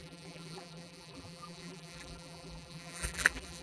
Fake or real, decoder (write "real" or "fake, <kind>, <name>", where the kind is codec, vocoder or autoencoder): fake, vocoder, BigVGAN v2